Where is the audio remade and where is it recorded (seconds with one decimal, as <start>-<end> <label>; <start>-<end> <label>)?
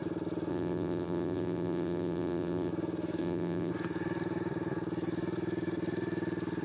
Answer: 0.0-0.5 recorded; 0.5-2.7 remade; 2.7-3.2 recorded; 3.2-3.7 remade; 3.7-6.6 recorded